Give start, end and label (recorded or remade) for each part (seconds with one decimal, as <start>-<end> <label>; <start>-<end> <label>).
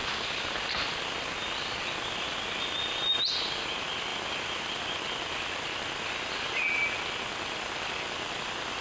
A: 0.0-8.8 recorded